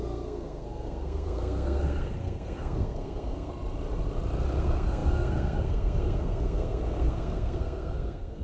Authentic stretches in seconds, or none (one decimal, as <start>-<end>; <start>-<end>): 3.5-4.6